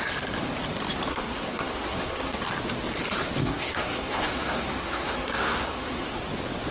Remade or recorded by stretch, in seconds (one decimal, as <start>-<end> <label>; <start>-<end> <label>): 0.0-1.1 recorded; 1.1-2.4 remade; 2.4-3.4 recorded; 3.4-6.2 remade; 6.2-6.7 recorded